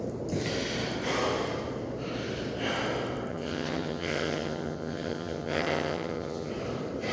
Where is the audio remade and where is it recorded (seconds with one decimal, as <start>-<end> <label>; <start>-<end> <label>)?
0.0-3.3 recorded; 3.3-6.5 remade; 6.5-7.1 recorded